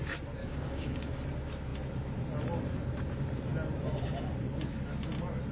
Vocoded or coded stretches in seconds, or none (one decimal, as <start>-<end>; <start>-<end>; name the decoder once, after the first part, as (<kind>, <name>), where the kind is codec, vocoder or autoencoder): 0.4-1.1 (codec, DAC)